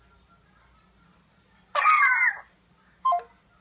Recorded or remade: recorded